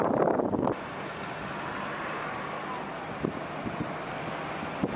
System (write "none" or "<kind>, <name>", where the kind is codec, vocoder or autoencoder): none